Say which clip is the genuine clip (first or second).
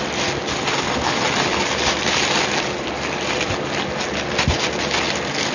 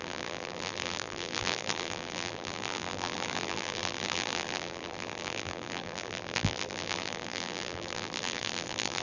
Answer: first